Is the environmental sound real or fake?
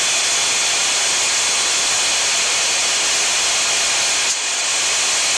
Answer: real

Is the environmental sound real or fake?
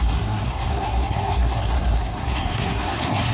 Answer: fake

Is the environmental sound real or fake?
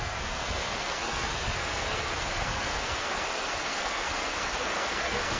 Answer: fake